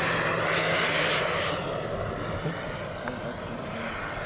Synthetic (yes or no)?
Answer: no